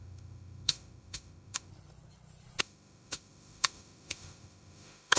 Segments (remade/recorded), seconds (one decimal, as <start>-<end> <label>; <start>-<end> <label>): 0.0-1.7 remade; 1.7-2.6 recorded; 2.6-5.2 remade